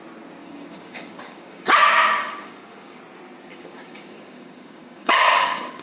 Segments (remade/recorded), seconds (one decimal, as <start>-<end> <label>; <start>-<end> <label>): 0.0-0.4 recorded; 0.4-3.0 remade; 3.0-3.5 recorded; 3.5-5.8 remade

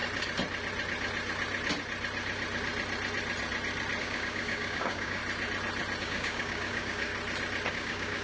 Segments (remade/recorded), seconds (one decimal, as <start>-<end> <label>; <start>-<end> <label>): 0.0-4.0 recorded; 4.0-5.2 remade; 5.2-6.0 recorded; 6.0-7.1 remade; 7.1-7.7 recorded; 7.7-8.2 remade